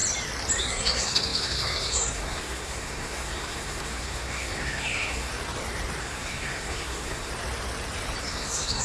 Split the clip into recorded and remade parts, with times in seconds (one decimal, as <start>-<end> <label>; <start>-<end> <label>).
0.0-0.6 recorded; 0.6-5.3 remade; 5.3-6.0 recorded; 6.0-7.3 remade; 7.3-8.2 recorded; 8.2-8.8 remade